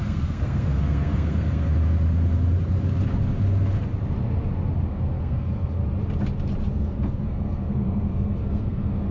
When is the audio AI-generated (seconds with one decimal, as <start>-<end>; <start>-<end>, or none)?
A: 0.0-1.7; 4.9-5.8; 6.7-9.1